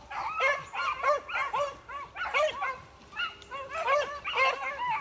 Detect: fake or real real